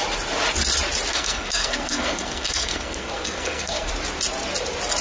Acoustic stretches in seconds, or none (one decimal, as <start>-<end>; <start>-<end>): 0.0-1.1; 3.9-5.0